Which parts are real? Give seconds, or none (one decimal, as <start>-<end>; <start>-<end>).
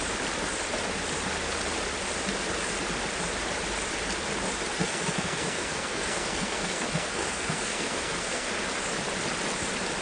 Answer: 0.0-4.8; 8.5-10.0